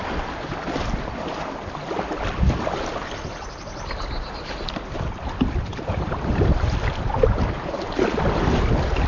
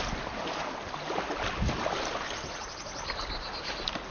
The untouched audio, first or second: second